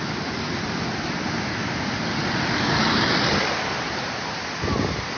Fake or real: real